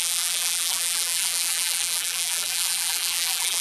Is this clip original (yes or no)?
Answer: no